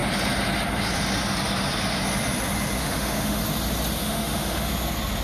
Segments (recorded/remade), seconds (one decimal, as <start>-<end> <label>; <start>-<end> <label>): 0.0-2.8 recorded; 2.8-3.4 remade; 3.4-4.0 recorded; 4.0-4.7 remade; 4.7-5.2 recorded